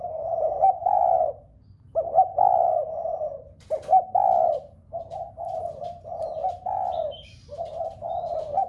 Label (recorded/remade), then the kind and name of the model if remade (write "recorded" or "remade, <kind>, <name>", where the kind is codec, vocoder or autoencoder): remade, vocoder, BigVGAN v2